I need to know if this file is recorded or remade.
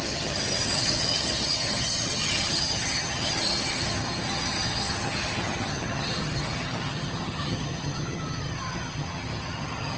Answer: remade